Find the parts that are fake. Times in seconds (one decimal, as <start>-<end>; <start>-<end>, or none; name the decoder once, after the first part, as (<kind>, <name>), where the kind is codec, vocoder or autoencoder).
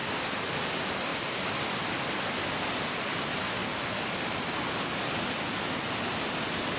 0.0-0.5 (vocoder, BigVGAN v2)